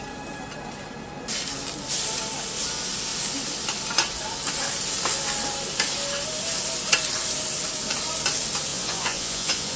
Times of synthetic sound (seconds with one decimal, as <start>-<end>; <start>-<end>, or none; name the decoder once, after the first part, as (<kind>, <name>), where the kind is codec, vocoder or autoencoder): 8.7-9.8 (vocoder, Vocos)